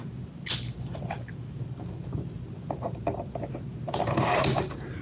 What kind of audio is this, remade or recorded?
recorded